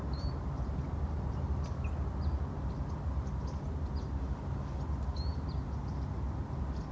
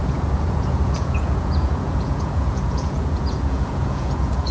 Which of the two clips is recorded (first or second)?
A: first